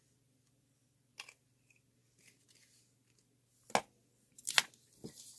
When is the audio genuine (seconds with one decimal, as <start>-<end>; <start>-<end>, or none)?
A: 0.0-5.4